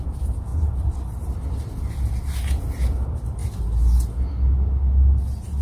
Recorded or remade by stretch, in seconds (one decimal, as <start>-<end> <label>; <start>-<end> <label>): 0.0-0.5 recorded; 0.5-1.8 remade; 1.8-5.6 recorded

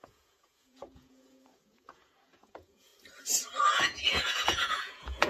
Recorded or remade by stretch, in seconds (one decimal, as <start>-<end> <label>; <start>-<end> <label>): 0.0-2.9 remade; 2.9-3.7 recorded; 3.7-5.3 remade

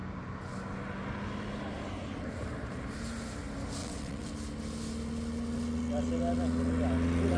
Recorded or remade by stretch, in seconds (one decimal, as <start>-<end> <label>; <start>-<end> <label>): 0.0-3.8 recorded; 3.8-4.3 remade; 4.3-7.4 recorded

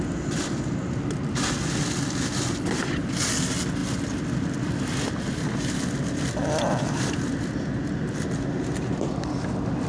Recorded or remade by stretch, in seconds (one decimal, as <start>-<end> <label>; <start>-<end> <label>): 0.0-9.9 recorded

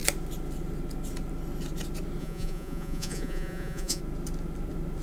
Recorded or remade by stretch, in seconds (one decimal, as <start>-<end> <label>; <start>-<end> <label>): 0.0-2.2 recorded; 2.2-4.0 remade; 4.0-5.0 recorded

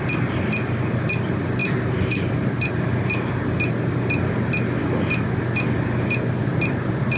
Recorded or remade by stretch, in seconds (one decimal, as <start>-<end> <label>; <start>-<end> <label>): 0.0-1.6 recorded; 1.6-2.7 remade; 2.7-6.4 recorded; 6.4-7.2 remade

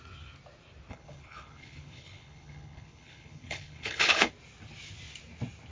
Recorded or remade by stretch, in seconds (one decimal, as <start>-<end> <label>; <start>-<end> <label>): 0.0-0.9 recorded; 0.9-4.3 remade; 4.3-5.7 recorded